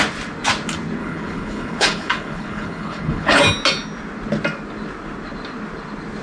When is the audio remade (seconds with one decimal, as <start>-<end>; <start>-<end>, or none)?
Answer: 1.0-3.4